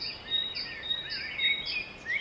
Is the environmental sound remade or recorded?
recorded